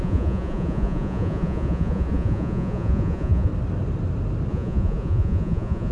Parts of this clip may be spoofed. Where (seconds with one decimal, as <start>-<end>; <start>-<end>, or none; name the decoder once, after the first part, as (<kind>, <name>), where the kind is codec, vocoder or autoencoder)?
0.0-3.5 (vocoder, Vocos); 4.5-5.9